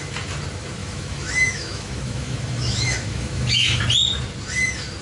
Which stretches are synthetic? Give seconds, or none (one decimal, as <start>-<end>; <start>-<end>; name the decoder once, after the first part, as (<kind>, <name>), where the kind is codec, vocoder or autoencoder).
0.8-3.8 (autoencoder, DAC-VAE)

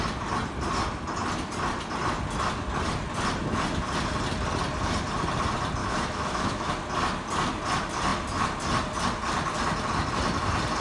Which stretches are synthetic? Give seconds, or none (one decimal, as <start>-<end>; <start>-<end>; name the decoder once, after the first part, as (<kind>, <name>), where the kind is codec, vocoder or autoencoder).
5.8-6.7 (autoencoder, DAC-VAE)

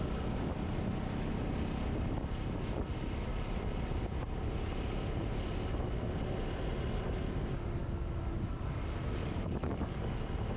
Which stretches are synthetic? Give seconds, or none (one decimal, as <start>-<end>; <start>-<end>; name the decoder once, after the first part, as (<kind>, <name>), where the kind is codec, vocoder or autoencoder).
7.8-8.6 (codec, DAC); 9.2-10.2

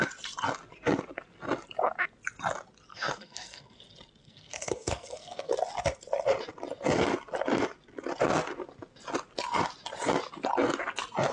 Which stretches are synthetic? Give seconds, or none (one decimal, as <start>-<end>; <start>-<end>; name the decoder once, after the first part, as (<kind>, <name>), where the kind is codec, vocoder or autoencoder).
2.9-3.8 (codec, SNAC); 4.2-5.5

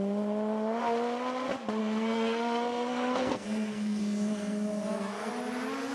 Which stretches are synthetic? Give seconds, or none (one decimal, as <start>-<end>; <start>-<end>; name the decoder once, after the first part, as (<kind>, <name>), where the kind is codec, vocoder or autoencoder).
1.8-5.3 (codec, SNAC)

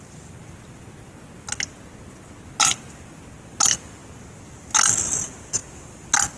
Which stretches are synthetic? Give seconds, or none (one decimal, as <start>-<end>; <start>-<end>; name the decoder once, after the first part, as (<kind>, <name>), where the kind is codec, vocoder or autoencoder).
none

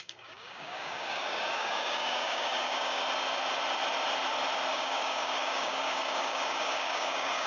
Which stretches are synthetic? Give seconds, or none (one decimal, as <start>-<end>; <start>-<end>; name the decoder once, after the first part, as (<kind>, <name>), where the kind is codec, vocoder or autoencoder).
0.0-3.0 (codec, DAC); 4.7-7.5

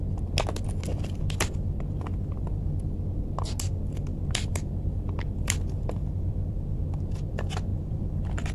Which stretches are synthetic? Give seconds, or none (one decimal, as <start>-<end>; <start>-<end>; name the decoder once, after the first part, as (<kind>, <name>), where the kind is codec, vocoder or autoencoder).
0.9-2.4 (vocoder, BigVGAN v2); 4.1-6.8; 7.7-8.5